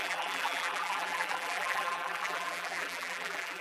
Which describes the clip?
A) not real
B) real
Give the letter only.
A